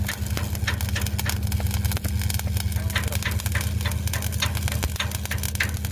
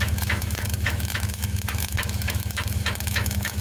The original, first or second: first